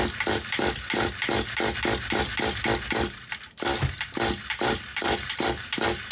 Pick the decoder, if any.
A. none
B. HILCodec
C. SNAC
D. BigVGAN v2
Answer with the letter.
A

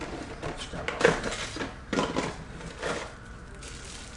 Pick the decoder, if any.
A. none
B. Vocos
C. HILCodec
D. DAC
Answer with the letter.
A